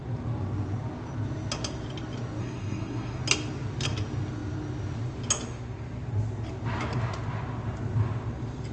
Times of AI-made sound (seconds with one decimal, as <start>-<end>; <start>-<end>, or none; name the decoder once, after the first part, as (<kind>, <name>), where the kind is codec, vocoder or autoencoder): 2.4-3.2 (codec, SNAC)